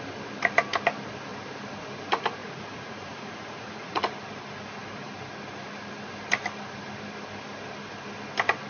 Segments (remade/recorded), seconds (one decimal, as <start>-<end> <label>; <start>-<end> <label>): 0.0-2.4 recorded; 2.4-4.0 remade; 4.0-8.7 recorded